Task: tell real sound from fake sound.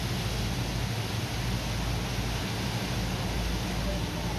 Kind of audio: real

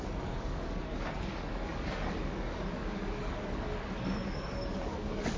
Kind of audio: fake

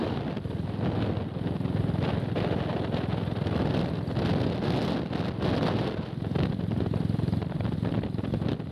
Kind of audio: real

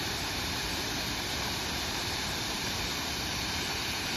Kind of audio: fake